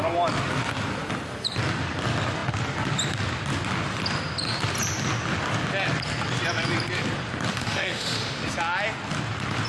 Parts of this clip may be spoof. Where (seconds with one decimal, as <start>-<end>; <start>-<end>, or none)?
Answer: 7.5-8.4